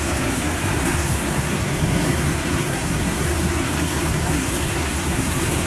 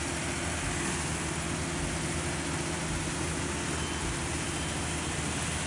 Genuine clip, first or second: second